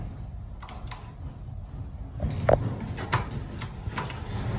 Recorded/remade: recorded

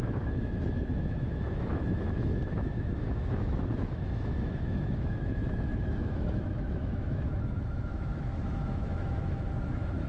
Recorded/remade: remade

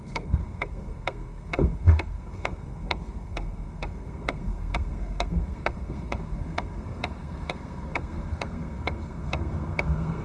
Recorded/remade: remade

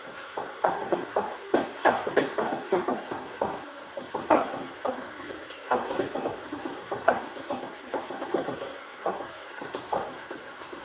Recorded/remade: remade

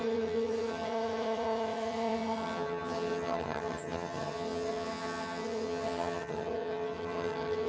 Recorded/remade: remade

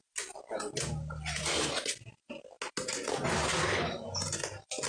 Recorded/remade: recorded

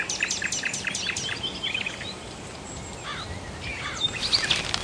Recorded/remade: recorded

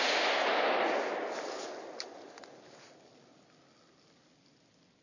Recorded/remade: recorded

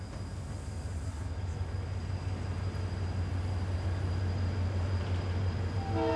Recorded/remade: recorded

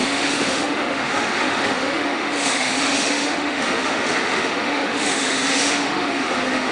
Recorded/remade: remade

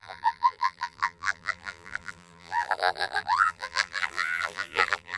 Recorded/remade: remade